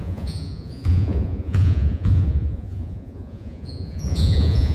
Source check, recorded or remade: remade